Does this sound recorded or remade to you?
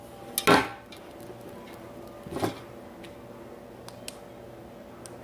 recorded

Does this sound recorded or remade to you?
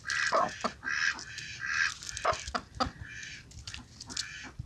recorded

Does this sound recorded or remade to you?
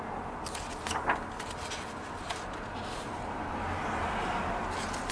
recorded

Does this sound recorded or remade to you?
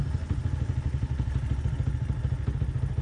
recorded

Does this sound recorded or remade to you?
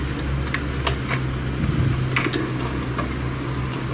recorded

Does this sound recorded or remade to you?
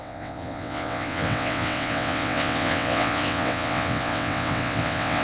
remade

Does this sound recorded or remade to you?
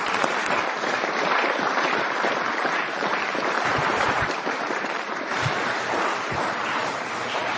remade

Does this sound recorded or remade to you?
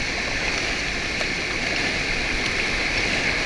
recorded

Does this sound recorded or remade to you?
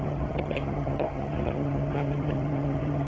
remade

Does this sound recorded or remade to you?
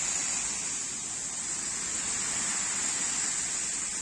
recorded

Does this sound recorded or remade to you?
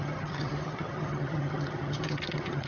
remade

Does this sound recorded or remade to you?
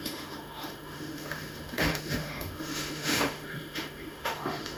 remade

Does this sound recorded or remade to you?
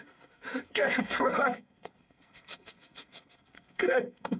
remade